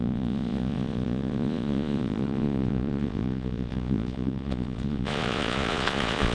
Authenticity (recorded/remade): remade